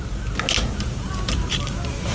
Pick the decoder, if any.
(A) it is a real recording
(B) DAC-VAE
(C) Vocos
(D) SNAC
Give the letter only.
A